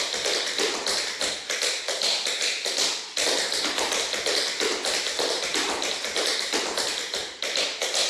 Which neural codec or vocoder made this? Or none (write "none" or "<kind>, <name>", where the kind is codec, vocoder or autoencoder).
none